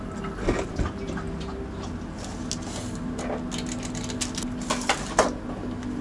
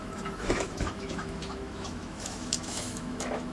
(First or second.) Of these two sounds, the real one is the first